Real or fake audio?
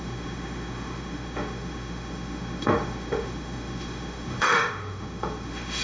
fake